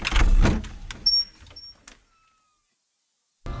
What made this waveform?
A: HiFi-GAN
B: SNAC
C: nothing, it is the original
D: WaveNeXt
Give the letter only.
C